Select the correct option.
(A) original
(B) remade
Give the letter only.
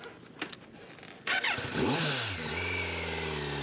A